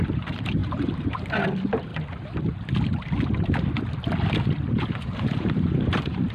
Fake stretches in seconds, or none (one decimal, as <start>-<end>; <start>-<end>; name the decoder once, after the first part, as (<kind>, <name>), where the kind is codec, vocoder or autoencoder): 0.0-1.9 (vocoder, BigVGAN v2); 4.9-6.3